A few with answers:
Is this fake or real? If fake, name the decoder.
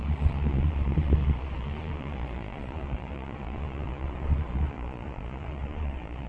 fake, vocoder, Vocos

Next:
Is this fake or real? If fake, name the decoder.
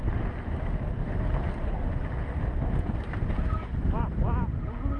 real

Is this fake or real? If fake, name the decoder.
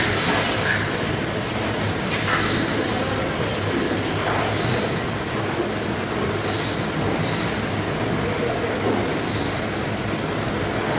real